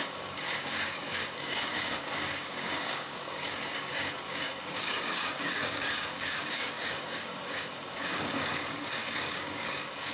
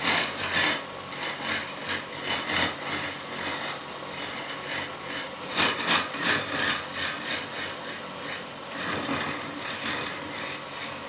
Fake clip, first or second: first